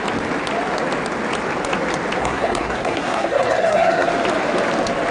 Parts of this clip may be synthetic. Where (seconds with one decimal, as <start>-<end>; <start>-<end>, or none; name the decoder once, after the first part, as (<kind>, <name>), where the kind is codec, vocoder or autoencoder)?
2.2-4.1 (codec, SNAC)